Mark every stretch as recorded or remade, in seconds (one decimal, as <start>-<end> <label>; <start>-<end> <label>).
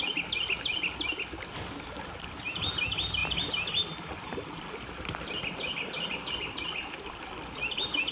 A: 0.0-3.2 recorded; 3.2-6.3 remade; 6.3-8.1 recorded